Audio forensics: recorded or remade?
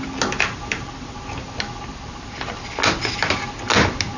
recorded